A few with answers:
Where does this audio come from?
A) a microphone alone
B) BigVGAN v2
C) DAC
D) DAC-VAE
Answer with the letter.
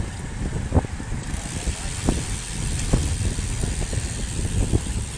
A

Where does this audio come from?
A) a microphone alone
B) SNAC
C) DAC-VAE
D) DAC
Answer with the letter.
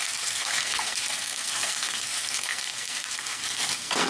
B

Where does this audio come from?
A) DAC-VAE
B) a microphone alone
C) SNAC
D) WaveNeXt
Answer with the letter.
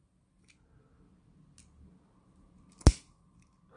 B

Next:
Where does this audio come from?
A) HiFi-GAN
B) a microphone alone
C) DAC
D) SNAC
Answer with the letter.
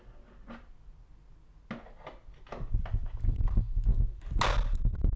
B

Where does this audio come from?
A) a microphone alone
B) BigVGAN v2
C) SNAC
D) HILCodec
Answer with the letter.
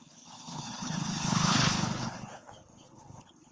D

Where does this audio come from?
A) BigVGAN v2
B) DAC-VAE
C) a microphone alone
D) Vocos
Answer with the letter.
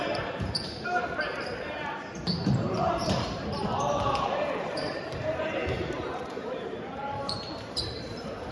A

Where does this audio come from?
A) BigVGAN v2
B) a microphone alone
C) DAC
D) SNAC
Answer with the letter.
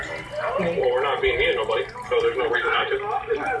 B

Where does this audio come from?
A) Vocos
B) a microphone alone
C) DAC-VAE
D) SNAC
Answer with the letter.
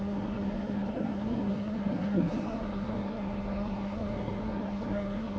D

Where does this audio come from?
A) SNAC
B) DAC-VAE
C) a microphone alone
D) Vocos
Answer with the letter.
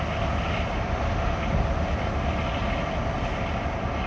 C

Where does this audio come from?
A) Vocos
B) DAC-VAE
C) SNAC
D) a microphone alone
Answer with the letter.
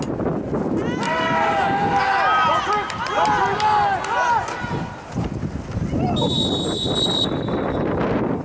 D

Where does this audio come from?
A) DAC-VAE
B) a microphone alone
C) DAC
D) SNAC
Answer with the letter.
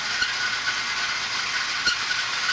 B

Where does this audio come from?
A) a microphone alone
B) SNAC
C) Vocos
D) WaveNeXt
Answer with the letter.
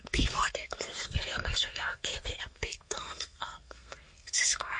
B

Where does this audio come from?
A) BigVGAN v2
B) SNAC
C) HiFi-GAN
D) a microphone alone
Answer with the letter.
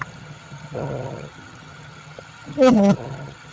C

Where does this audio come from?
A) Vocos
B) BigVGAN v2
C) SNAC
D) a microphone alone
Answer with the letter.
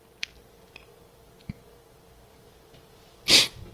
D